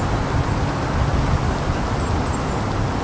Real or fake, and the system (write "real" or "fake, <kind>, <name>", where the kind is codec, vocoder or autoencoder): real